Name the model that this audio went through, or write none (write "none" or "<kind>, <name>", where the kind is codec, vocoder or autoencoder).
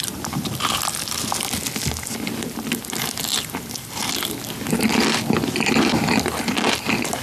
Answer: none